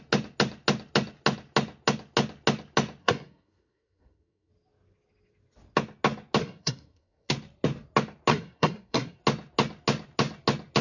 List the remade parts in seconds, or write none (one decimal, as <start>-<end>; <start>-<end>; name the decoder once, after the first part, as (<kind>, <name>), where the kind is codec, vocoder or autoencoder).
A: 3.0-4.5 (codec, SNAC); 6.4-7.3; 8.3-9.2